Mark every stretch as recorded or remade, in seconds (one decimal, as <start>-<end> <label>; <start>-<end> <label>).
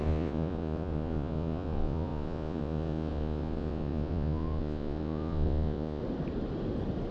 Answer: 0.0-6.0 remade; 6.0-7.1 recorded